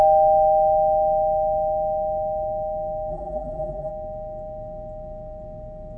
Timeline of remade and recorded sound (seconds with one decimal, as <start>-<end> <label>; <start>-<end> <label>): 0.0-3.1 recorded; 3.1-3.9 remade; 3.9-6.0 recorded